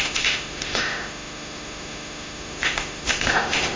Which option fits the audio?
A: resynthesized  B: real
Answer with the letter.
A